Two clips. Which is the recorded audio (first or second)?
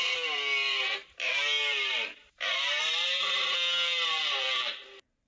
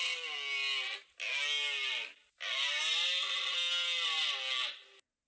second